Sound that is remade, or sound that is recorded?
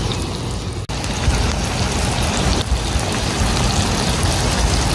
recorded